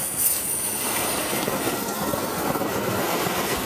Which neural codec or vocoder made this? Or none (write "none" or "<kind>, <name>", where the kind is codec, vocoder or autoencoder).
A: codec, SNAC